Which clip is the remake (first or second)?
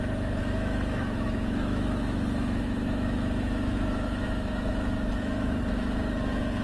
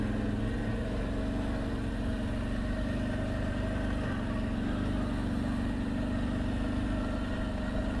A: first